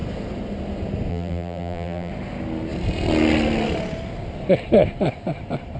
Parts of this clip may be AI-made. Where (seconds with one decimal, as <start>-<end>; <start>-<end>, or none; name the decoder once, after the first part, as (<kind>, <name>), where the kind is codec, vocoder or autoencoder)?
1.1-2.1 (vocoder, BigVGAN v2)